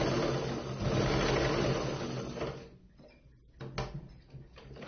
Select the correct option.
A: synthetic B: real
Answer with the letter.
B